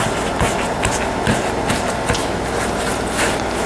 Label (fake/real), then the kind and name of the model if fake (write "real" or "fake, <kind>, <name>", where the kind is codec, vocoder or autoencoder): real